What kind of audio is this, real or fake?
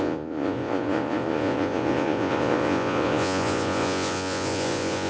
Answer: fake